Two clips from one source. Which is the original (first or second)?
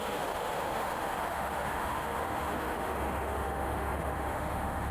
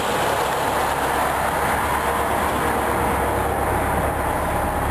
second